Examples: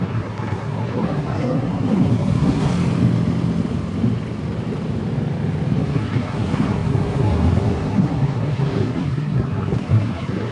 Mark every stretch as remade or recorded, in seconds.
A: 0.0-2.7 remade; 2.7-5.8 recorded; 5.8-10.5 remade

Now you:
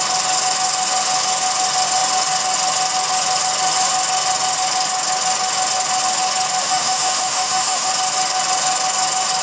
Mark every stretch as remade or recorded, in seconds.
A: 0.0-6.6 recorded; 6.6-7.9 remade; 7.9-9.4 recorded

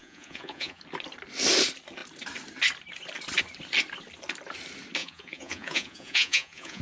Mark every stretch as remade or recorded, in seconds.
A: 0.0-0.8 remade; 0.8-5.0 recorded; 5.0-6.8 remade

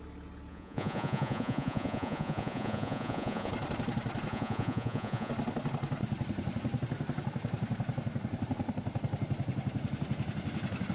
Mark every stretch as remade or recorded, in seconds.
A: 0.0-0.5 recorded; 0.5-3.5 remade; 3.5-4.3 recorded; 4.3-5.3 remade; 5.3-10.9 recorded

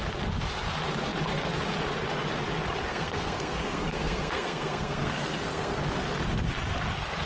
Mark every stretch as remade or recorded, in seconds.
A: 0.0-2.9 recorded; 2.9-5.8 remade; 5.8-7.3 recorded

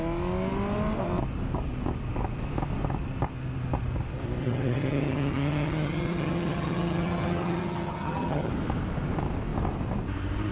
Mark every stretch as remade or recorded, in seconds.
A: 0.0-4.4 recorded; 4.4-8.5 remade; 8.5-10.5 recorded

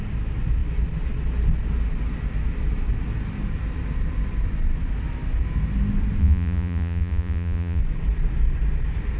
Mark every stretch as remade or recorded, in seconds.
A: 0.0-6.2 recorded; 6.2-7.8 remade; 7.8-9.2 recorded

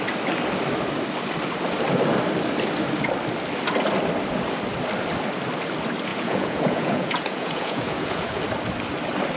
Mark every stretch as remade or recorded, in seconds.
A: 0.0-6.1 recorded; 6.1-8.4 remade; 8.4-9.4 recorded